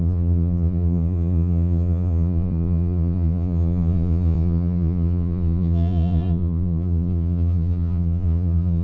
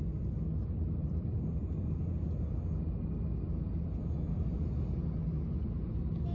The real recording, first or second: second